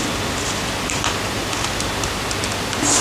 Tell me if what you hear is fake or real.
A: real